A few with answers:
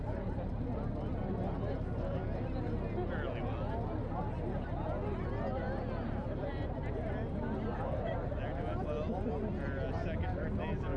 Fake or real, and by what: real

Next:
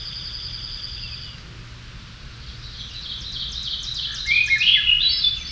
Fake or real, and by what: real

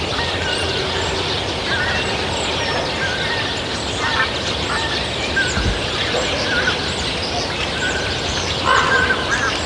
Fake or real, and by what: real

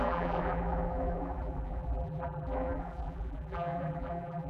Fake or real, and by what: fake, vocoder, BigVGAN v2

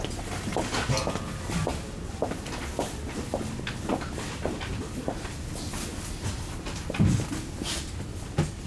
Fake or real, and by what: real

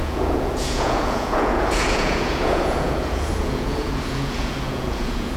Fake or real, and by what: fake, vocoder, Vocos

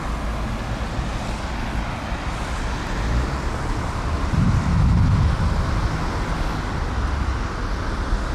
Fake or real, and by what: real